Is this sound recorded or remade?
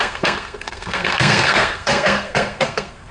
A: remade